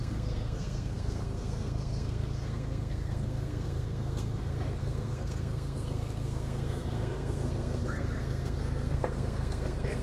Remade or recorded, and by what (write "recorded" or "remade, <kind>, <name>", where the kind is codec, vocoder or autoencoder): remade, codec, SNAC